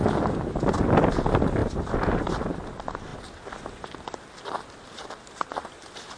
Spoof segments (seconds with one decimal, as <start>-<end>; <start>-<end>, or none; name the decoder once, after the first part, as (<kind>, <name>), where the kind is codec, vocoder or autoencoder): none